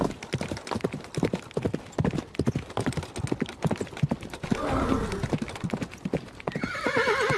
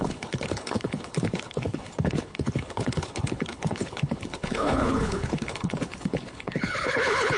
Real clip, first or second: first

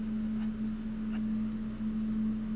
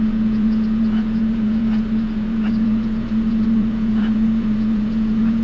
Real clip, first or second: first